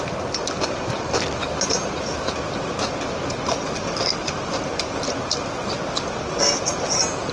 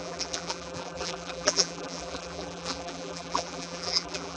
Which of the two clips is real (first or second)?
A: first